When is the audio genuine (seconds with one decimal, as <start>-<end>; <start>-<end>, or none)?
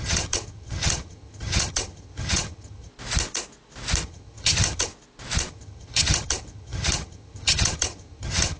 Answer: 2.9-4.0; 4.9-5.5